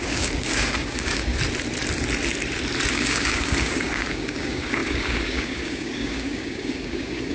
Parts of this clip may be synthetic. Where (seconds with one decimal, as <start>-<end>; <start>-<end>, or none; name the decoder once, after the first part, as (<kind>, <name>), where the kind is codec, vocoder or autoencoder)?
0.0-1.3 (codec, DAC); 2.9-7.3